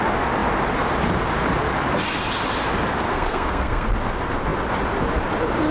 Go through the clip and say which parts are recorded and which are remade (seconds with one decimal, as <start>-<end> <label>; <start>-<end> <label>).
0.0-3.1 recorded; 3.1-3.9 remade; 3.9-5.7 recorded